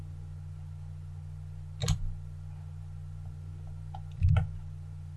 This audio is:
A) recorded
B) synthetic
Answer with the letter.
A